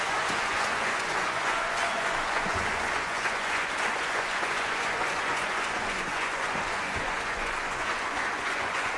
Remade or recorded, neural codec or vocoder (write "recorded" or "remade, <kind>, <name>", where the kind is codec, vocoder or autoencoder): remade, vocoder, Vocos